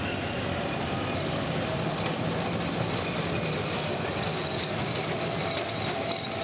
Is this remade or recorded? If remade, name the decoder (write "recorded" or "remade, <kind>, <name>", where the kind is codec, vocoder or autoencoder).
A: recorded